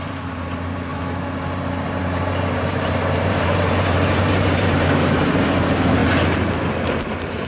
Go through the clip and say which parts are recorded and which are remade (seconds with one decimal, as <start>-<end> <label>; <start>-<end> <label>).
0.0-6.0 remade; 6.0-6.7 recorded; 6.7-7.5 remade